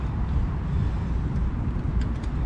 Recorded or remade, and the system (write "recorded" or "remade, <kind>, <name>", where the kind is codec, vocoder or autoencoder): recorded